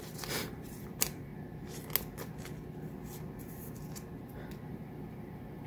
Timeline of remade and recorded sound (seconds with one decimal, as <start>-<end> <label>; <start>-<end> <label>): 0.0-1.3 remade; 1.3-4.7 recorded; 4.7-5.7 remade